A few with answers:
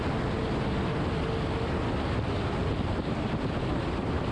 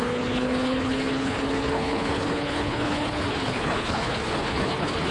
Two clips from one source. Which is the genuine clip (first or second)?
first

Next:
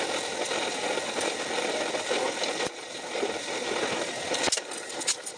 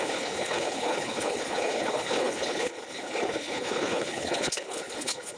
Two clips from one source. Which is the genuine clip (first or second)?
first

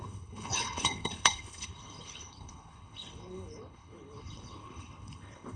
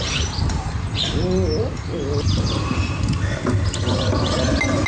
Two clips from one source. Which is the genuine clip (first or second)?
second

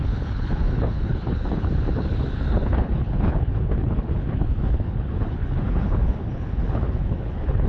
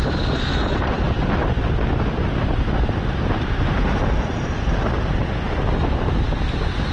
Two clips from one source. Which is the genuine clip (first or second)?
second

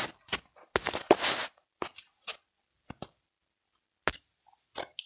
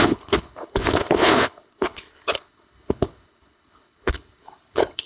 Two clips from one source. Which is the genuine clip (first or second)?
first